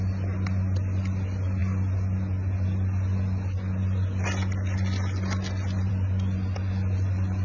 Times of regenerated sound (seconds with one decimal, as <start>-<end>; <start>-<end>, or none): none